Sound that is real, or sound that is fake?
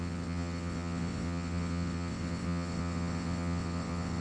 fake